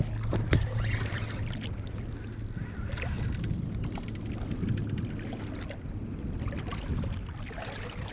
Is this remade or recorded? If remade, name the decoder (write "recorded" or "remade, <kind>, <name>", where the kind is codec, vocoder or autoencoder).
recorded